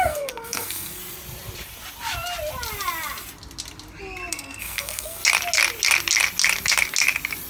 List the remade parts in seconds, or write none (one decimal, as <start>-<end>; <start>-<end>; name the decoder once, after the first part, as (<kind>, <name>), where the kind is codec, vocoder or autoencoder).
0.0-1.0 (codec, SNAC); 4.3-5.2